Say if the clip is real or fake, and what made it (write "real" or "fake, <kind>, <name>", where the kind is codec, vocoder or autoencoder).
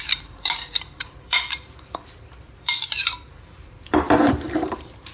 fake, vocoder, BigVGAN v2